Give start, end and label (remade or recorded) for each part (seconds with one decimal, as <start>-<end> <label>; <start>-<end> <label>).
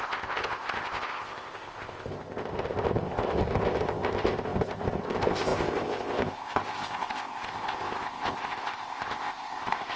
0.0-10.0 remade